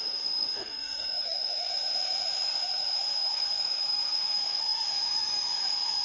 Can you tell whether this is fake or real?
fake